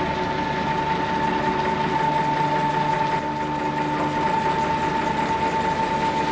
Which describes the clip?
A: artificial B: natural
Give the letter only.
B